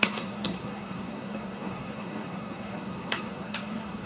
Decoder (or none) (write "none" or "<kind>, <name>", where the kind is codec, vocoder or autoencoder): codec, SNAC